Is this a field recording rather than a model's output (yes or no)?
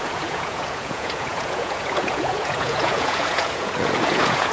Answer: no